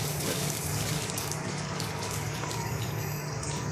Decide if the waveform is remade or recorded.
remade